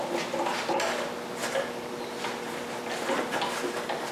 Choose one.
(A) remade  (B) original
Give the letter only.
B